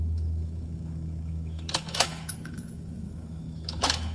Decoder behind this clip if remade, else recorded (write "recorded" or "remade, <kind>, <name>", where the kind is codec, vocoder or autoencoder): remade, autoencoder, DAC-VAE